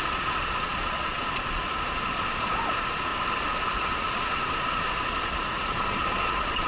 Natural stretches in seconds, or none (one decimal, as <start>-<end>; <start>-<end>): 3.1-3.8